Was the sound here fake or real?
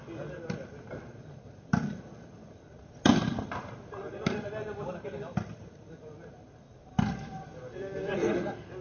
real